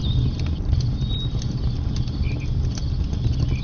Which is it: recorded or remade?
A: recorded